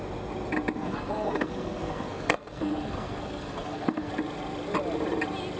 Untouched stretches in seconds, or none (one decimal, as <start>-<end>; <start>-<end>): 0.0-0.8; 4.1-5.6